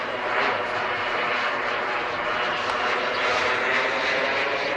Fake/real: real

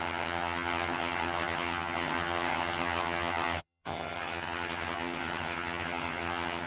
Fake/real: fake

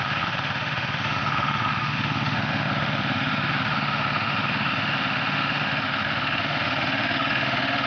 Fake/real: fake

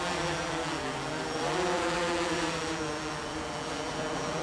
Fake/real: fake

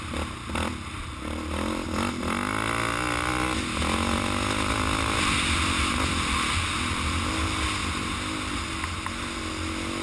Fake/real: real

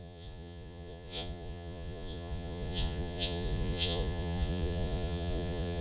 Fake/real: fake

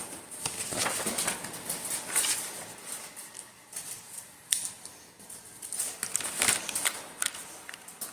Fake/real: real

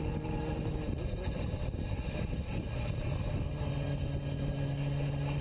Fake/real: real